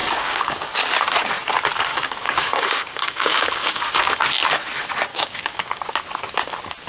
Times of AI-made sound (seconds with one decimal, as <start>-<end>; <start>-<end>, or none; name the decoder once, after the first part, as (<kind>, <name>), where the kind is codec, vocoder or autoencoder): 0.0-0.7 (codec, DAC); 1.9-4.2; 5.1-5.8